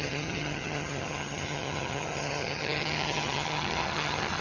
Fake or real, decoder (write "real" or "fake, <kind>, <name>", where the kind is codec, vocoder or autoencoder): fake, vocoder, HiFi-GAN